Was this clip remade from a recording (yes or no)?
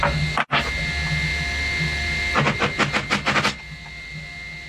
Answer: no